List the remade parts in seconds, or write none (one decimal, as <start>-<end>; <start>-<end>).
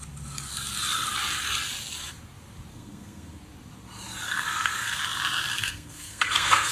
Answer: 2.7-3.4; 4.3-5.0; 5.5-6.7